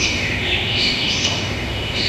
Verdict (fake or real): fake